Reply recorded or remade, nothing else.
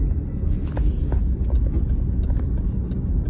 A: recorded